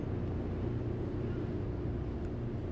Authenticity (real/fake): real